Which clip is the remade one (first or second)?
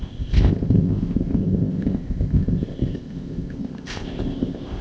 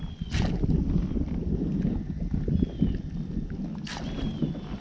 first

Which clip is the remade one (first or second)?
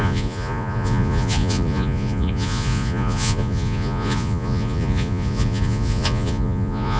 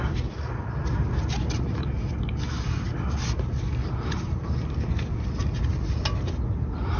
first